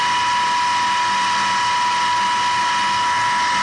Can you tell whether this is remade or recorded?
recorded